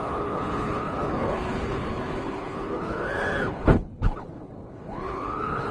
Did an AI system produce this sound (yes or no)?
yes